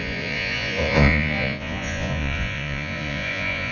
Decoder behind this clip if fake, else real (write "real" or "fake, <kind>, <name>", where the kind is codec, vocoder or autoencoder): fake, vocoder, Vocos